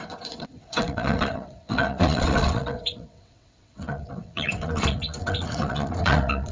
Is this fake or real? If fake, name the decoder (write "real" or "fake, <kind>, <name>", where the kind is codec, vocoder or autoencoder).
fake, vocoder, WaveNeXt